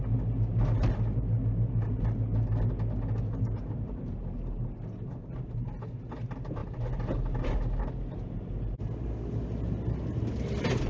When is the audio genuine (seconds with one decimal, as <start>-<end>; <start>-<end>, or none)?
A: 0.0-10.9